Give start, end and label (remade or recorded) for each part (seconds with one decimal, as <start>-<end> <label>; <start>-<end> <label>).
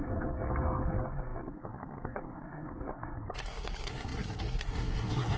0.0-5.4 remade